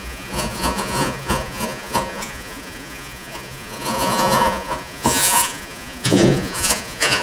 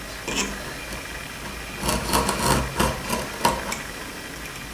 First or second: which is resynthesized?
first